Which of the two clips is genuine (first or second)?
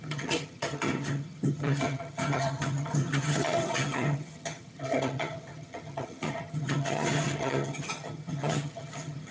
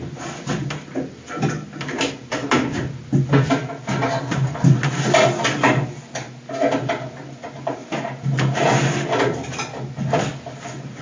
second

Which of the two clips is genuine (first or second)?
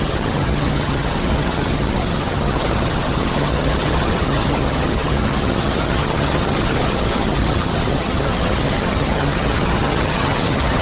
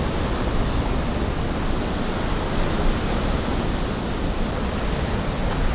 second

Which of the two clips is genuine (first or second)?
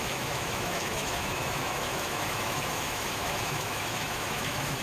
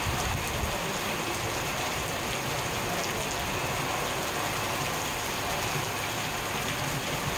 second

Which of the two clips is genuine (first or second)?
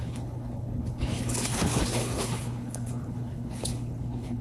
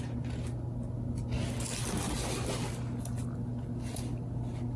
second